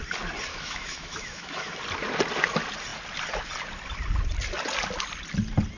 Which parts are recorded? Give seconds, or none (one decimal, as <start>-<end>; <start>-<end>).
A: 0.0-0.5; 1.8-5.8